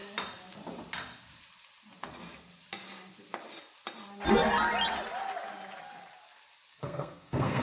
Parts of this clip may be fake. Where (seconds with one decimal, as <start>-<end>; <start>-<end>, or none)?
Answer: 6.7-7.6